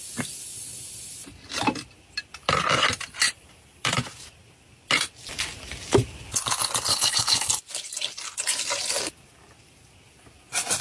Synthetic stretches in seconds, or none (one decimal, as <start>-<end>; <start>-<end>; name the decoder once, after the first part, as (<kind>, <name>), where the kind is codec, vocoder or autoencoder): 6.9-7.5 (codec, HILCodec)